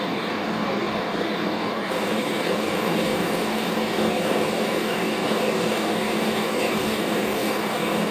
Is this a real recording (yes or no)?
no